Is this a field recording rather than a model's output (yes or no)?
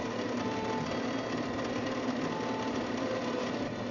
yes